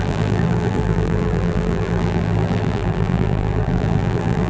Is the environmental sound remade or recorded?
remade